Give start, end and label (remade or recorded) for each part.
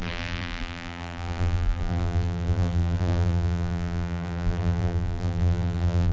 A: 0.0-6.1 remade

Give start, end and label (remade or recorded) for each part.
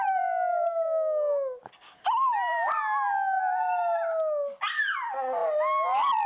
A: 0.0-6.3 recorded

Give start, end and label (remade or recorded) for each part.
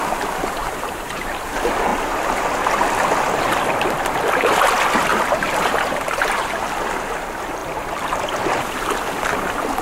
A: 0.0-0.6 recorded; 0.6-1.3 remade; 1.3-5.1 recorded; 5.1-6.6 remade; 6.6-9.8 recorded